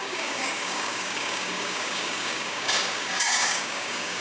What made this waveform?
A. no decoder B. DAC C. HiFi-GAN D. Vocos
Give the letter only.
B